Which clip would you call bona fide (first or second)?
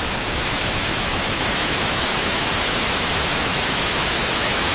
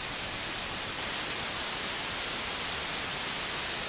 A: second